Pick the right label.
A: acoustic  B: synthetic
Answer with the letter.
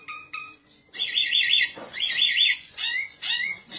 B